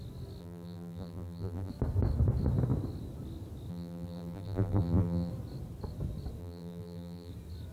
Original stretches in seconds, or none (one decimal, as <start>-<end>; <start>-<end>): 0.0-0.4; 1.7-3.7; 5.3-6.4; 7.3-7.7